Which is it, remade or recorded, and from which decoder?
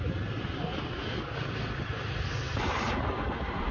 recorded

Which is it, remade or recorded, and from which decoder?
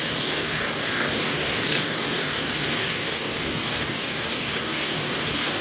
remade, codec, DAC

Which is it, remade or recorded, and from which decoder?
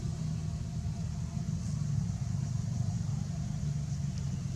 recorded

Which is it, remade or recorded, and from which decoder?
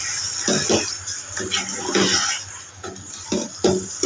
recorded